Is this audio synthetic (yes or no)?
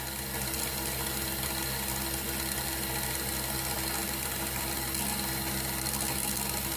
no